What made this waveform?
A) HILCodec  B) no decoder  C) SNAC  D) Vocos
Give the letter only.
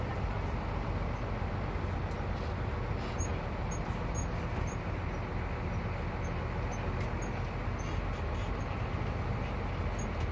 B